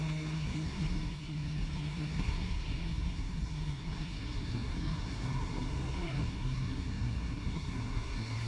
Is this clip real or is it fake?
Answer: fake